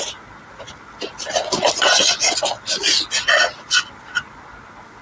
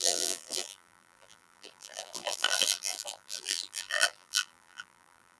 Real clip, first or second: first